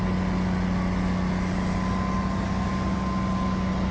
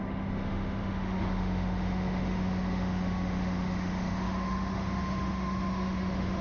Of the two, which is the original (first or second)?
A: first